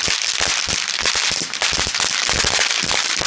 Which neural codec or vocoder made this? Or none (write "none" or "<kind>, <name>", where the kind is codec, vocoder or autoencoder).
none